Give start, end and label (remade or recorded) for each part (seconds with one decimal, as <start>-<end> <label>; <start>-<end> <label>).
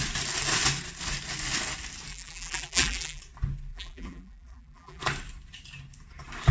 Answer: 0.0-2.1 recorded; 2.1-3.2 remade; 3.2-3.7 recorded; 3.7-5.0 remade; 5.0-6.5 recorded